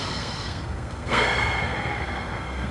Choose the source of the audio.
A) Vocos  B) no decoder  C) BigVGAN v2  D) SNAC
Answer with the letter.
D